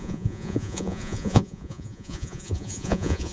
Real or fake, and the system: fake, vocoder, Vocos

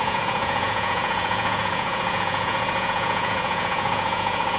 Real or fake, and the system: fake, vocoder, Vocos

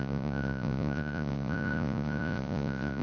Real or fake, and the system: fake, vocoder, Vocos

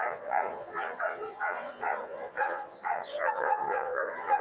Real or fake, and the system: fake, vocoder, Vocos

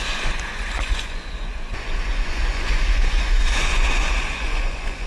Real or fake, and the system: fake, vocoder, Vocos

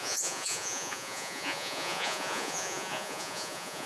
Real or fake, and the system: fake, vocoder, Vocos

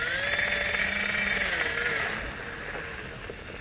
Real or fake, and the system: real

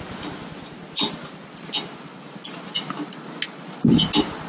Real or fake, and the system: real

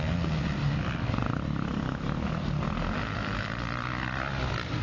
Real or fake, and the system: real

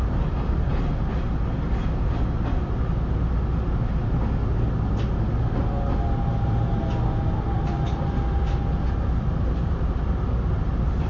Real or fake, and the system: real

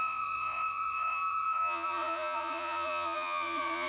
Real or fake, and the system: fake, vocoder, Vocos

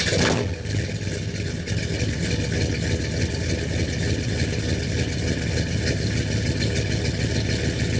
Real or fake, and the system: real